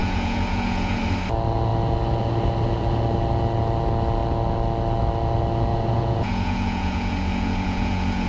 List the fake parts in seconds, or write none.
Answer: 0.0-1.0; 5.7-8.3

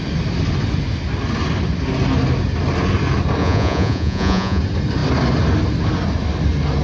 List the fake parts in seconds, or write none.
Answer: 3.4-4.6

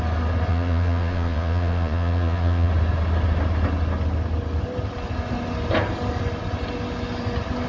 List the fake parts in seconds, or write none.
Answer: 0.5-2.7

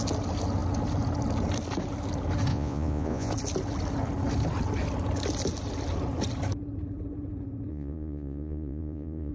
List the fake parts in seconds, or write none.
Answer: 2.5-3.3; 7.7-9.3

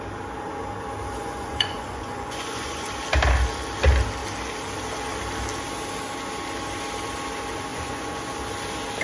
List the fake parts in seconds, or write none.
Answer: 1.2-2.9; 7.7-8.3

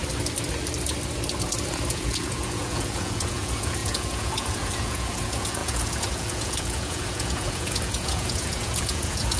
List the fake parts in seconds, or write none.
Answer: 1.9-9.4